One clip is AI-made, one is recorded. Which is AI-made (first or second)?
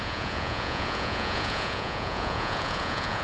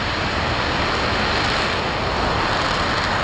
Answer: first